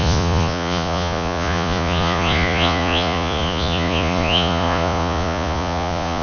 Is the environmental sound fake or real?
fake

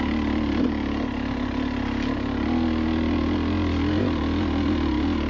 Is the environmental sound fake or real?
real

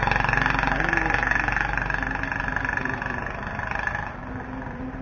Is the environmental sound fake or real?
real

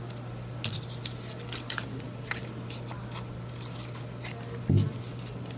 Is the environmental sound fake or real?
real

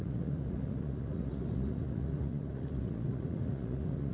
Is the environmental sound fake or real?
fake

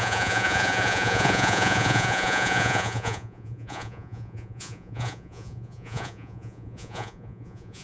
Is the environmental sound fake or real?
fake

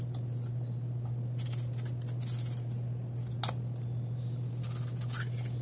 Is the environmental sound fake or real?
real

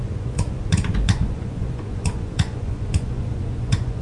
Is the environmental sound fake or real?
fake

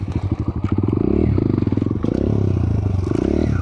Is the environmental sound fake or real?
real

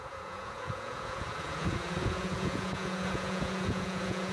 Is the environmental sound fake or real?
fake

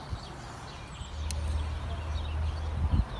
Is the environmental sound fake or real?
real